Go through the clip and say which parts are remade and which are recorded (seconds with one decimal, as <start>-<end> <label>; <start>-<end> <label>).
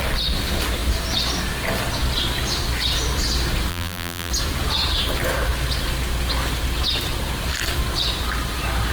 0.0-3.7 recorded; 3.7-4.3 remade; 4.3-8.9 recorded